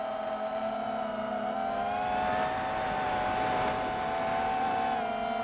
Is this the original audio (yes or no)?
yes